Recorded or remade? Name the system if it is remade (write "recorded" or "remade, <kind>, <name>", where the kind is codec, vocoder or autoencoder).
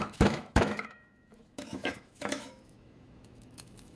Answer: remade, autoencoder, DAC-VAE